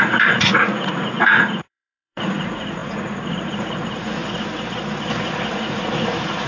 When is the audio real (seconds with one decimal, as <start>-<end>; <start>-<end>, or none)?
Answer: 4.2-5.5